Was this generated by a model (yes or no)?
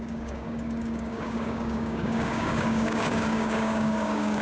yes